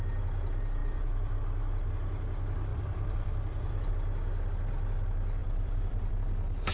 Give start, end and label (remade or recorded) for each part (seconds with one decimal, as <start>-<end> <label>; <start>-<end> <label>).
0.0-0.8 recorded; 0.8-1.4 remade; 1.4-2.7 recorded; 2.7-3.9 remade; 3.9-5.4 recorded; 5.4-6.1 remade; 6.1-6.7 recorded